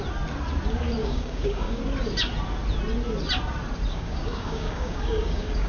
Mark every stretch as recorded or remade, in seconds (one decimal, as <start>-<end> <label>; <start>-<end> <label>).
0.0-1.0 recorded; 1.0-1.8 remade; 1.8-3.9 recorded; 3.9-5.7 remade